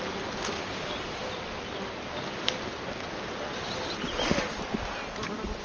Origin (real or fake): real